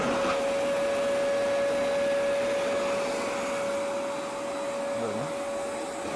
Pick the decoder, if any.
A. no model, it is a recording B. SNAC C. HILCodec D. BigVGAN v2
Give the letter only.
A